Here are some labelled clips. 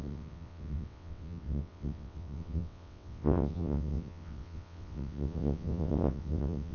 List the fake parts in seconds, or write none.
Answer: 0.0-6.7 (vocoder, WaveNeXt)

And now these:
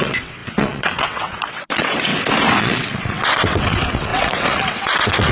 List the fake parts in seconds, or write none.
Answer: 0.0-2.1 (vocoder, WaveNeXt); 2.6-5.3